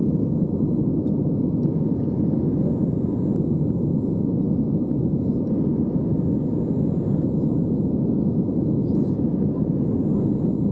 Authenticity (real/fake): real